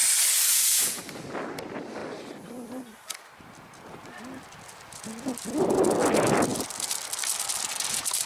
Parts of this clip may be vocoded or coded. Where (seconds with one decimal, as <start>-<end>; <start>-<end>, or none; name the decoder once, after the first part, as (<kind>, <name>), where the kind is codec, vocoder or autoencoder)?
0.5-1.0 (vocoder, Vocos)